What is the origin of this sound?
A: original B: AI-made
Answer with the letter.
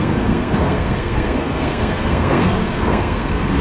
B